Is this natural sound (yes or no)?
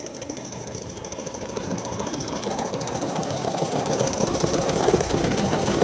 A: no